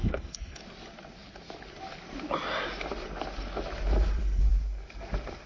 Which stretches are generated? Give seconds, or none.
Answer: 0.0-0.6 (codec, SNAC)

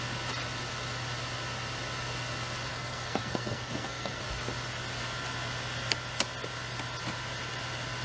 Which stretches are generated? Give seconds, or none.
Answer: 2.7-4.2 (codec, SNAC)